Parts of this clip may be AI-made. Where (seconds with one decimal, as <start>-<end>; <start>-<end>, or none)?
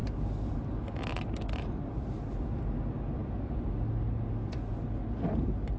none